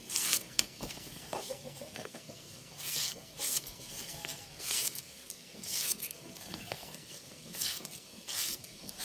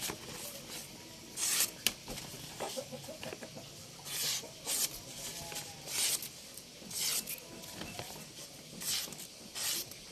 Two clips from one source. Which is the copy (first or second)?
first